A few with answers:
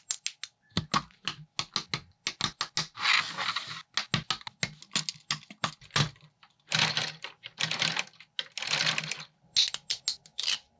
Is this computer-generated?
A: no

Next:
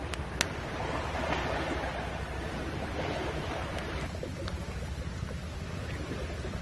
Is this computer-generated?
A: no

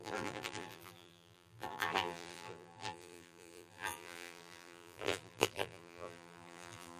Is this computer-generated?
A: yes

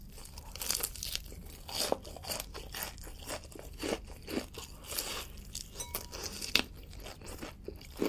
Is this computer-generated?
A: no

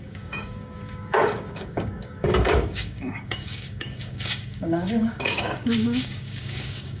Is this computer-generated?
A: yes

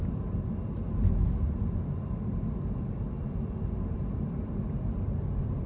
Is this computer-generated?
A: no